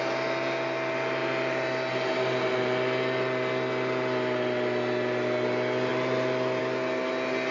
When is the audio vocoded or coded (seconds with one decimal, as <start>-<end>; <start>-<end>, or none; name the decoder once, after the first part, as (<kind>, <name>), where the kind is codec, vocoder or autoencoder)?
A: none